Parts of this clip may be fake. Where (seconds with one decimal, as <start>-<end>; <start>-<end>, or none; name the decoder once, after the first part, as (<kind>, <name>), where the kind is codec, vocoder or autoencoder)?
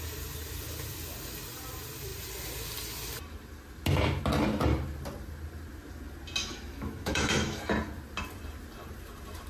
6.4-7.6 (autoencoder, DAC-VAE)